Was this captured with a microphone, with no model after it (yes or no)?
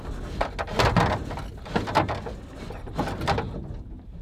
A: yes